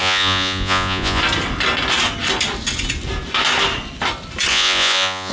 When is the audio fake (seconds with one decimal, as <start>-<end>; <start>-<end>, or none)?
0.0-1.2; 4.5-5.3